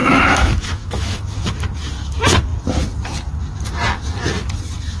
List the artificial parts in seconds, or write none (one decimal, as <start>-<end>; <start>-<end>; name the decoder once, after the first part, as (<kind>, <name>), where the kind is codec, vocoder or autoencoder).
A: 0.0-1.2 (autoencoder, DAC-VAE)

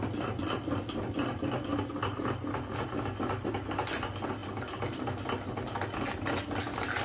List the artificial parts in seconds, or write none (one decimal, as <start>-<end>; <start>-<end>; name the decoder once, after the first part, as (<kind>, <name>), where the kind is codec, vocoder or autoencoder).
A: none

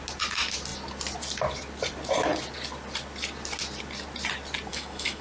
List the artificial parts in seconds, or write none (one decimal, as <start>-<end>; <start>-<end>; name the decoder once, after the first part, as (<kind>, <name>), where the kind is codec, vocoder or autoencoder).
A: 4.7-5.2 (autoencoder, DAC-VAE)

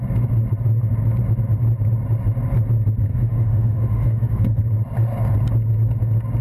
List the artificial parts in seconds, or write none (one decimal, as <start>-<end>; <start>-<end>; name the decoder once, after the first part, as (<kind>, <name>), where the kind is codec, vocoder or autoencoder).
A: 3.1-4.6 (autoencoder, DAC-VAE)

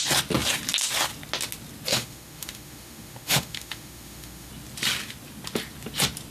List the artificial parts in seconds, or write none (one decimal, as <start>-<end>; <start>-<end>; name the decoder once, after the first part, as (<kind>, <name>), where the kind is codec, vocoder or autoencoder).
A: 1.9-4.5 (autoencoder, DAC-VAE)

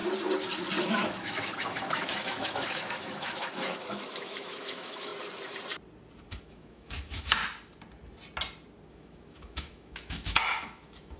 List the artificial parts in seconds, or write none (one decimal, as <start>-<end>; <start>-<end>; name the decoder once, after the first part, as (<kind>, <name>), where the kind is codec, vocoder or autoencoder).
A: 0.8-5.1 (autoencoder, DAC-VAE); 6.4-7.4; 8.9-11.2

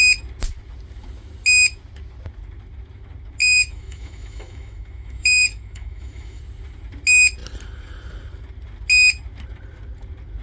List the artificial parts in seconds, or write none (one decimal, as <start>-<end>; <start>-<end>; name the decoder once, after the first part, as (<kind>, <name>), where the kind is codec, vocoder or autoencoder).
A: 3.4-6.4 (autoencoder, DAC-VAE)

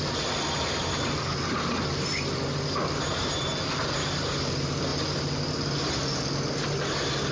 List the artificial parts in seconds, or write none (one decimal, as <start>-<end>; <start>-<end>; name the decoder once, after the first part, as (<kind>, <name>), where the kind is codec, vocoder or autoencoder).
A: none